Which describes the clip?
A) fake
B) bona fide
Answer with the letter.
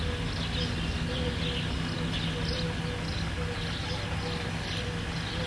B